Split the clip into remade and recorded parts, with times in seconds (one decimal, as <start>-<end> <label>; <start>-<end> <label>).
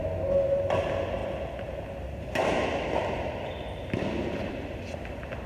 0.0-5.5 recorded